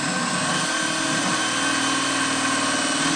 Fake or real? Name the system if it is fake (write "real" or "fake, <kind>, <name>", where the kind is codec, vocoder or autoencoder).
real